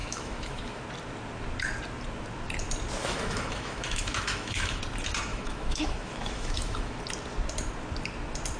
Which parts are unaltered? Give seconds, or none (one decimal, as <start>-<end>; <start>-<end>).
0.8-3.0; 4.8-5.3; 7.0-8.6